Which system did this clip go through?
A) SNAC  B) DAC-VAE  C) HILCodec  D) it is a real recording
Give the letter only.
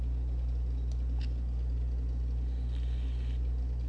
D